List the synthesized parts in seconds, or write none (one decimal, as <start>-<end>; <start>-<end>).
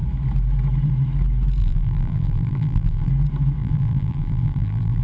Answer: 1.6-3.1; 3.6-5.0